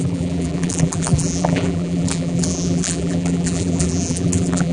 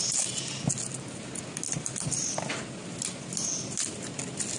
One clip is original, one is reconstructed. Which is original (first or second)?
second